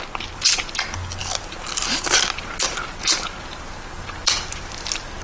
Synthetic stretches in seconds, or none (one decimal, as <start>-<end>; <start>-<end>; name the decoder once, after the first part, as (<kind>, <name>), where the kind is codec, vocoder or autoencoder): none